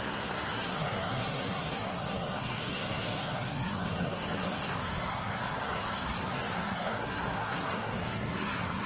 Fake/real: fake